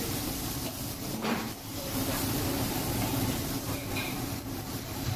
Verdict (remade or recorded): remade